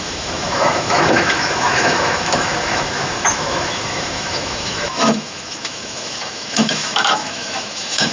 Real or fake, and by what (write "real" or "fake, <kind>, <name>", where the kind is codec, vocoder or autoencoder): fake, autoencoder, DAC-VAE